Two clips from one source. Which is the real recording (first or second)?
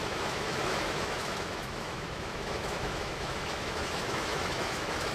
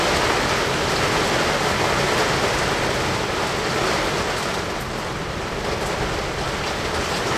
second